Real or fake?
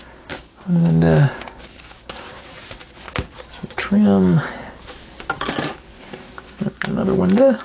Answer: fake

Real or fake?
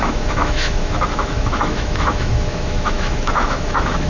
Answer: fake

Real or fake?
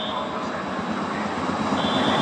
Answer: real